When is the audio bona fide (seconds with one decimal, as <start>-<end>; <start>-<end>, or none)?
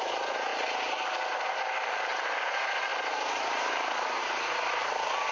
0.0-5.3